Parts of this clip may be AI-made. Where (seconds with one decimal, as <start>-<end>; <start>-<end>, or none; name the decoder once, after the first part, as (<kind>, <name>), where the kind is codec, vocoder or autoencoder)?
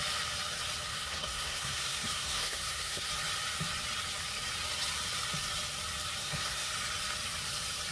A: 0.9-3.1 (codec, SNAC); 6.2-6.7